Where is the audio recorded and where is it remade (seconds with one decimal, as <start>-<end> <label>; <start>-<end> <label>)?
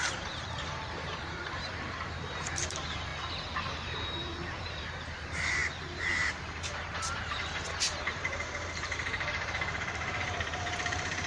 0.0-3.1 remade; 3.1-4.6 recorded; 4.6-11.3 remade